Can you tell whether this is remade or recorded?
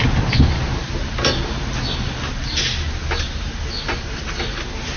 recorded